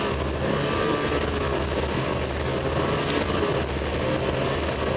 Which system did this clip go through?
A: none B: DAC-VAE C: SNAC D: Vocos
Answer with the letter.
A